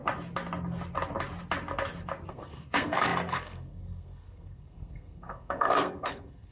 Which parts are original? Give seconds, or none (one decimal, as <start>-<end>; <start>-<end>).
0.0-2.3